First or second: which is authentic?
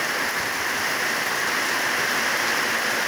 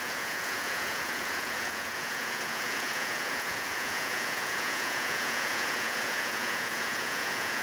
first